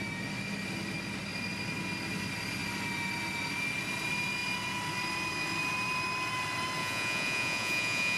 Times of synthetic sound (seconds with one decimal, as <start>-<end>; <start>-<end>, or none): 6.8-8.2